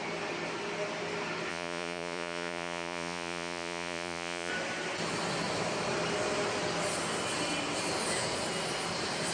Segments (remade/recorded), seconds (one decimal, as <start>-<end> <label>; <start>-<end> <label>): 0.0-1.5 recorded; 1.5-4.5 remade; 4.5-9.3 recorded